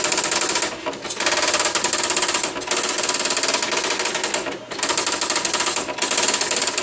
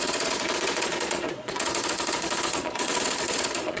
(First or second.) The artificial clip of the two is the second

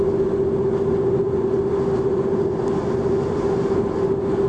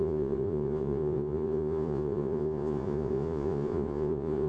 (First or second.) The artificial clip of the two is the second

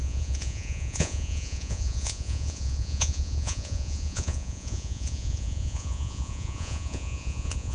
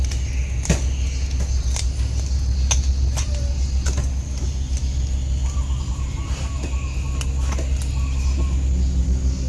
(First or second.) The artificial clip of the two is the first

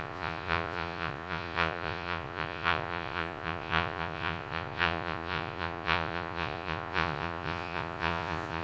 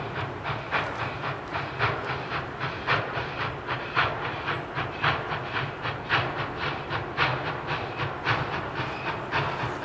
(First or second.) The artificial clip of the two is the first